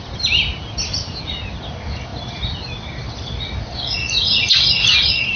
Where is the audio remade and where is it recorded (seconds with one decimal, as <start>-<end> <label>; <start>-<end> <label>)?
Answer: 0.0-5.4 recorded